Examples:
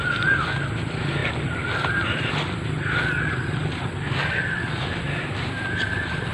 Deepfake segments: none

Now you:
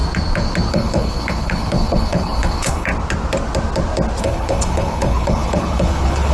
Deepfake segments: 0.7-2.9 (codec, HILCodec); 4.2-6.3

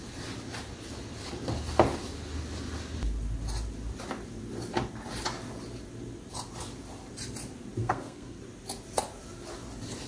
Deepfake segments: 7.8-8.4 (codec, SNAC)

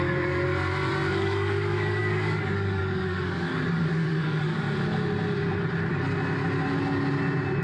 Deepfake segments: 0.0-0.4 (codec, DAC); 1.1-4.5

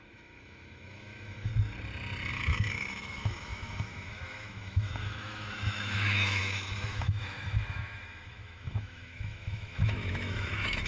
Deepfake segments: 0.0-1.5 (autoencoder, DAC-VAE); 2.4-10.9

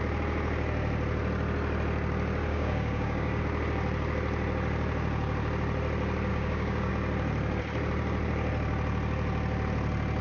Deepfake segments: 2.5-3.4 (codec, DAC); 6.3-6.9

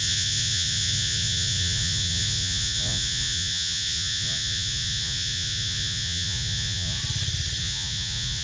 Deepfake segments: 0.0-7.0 (vocoder, Vocos); 7.6-8.4